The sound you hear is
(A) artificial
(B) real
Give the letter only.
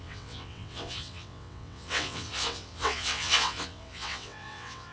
A